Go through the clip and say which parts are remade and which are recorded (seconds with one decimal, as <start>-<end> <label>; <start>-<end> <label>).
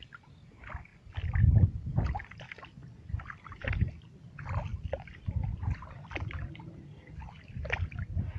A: 0.0-2.8 recorded; 2.8-3.8 remade; 3.8-4.7 recorded; 4.7-7.9 remade; 7.9-8.4 recorded